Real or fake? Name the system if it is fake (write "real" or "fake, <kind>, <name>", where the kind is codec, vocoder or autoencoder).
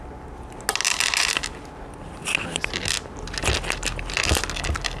real